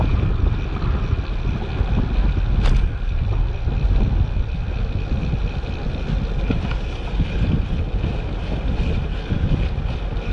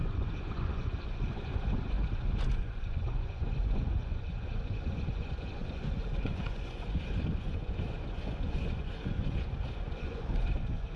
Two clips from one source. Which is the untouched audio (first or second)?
first